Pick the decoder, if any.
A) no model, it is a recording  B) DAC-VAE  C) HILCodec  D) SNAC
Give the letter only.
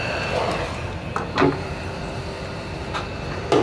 A